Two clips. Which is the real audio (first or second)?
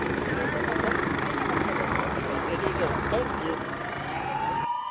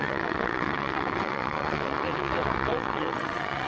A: first